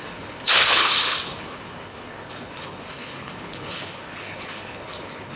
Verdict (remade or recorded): remade